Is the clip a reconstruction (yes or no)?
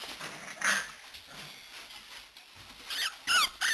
no